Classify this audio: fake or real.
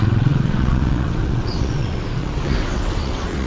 fake